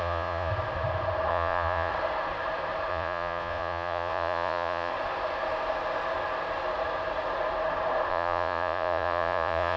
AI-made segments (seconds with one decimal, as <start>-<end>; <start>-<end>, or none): 0.0-0.5; 1.3-1.9; 2.9-4.9; 8.1-9.8